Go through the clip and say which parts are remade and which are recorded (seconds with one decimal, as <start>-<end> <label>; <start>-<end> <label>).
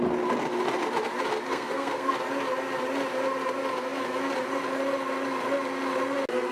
0.0-1.5 recorded; 1.5-2.1 remade; 2.1-6.5 recorded